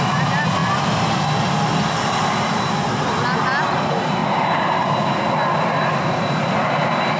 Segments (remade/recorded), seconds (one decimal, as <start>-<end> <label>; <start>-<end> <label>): 0.0-7.2 recorded